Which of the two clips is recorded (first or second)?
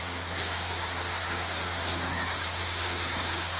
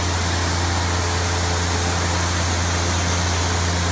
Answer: second